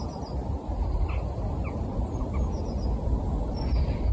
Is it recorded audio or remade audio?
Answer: recorded